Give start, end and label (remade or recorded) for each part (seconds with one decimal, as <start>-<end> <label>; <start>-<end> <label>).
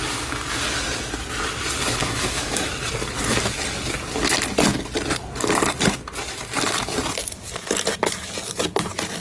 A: 0.0-2.0 recorded; 2.0-2.7 remade; 2.7-9.2 recorded